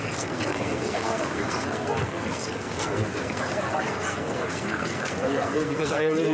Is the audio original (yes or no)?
no